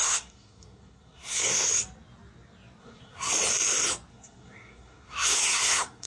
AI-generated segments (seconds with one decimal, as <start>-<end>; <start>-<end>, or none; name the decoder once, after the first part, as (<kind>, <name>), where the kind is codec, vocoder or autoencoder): 0.0-1.7 (codec, SNAC); 2.8-3.3; 4.1-6.1